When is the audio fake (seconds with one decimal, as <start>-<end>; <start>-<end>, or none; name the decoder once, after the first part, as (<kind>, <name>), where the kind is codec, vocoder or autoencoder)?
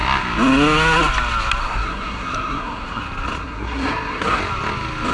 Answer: 1.6-3.0 (codec, SNAC); 3.4-4.4